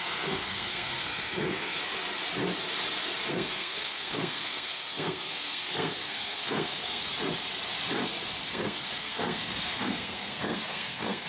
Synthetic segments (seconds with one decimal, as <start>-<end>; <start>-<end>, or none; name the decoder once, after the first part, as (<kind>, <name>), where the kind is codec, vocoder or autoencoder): 0.0-1.9 (codec, SNAC); 3.3-7.1; 8.5-11.3